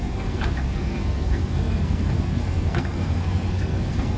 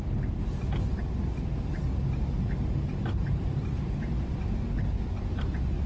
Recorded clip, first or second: second